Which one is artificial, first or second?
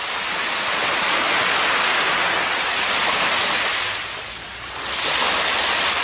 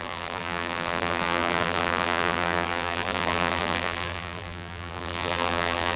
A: second